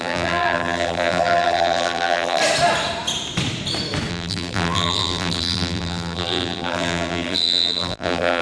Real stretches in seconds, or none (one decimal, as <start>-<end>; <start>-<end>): 2.4-4.1